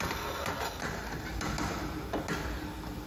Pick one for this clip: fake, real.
real